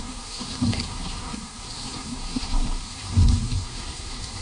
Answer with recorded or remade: remade